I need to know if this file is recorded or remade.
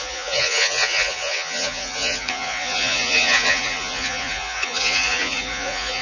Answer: remade